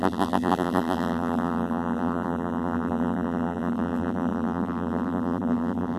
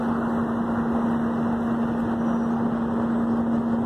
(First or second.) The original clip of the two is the second